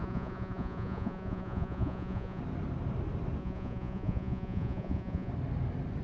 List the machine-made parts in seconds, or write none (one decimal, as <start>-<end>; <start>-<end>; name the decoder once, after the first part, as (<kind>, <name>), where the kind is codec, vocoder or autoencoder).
0.0-2.4 (vocoder, Vocos); 3.4-5.3